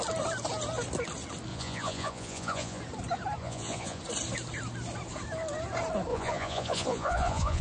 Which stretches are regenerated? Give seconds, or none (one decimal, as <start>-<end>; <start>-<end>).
1.5-2.8; 3.4-4.0; 6.1-7.6